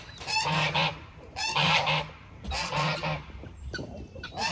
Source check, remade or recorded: remade